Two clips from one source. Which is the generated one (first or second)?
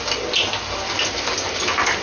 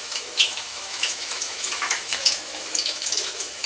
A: second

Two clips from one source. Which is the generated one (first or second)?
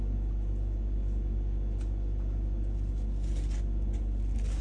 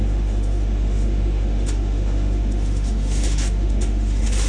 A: second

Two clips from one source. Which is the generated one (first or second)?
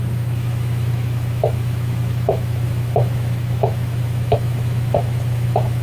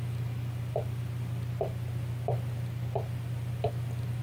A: first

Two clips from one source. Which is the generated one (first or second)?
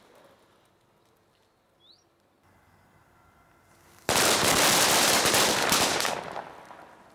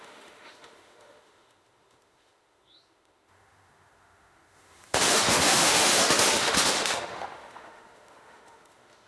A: second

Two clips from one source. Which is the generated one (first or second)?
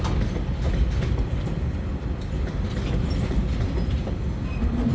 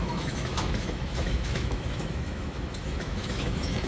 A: second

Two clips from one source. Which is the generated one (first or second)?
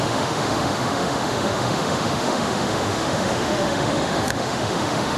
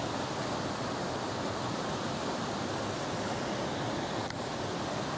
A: first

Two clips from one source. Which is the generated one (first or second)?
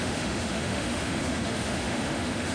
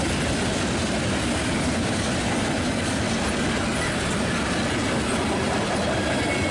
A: first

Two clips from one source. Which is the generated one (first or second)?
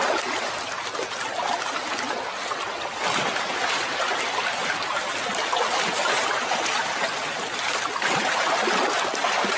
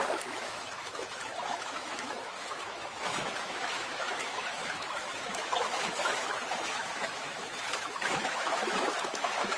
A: second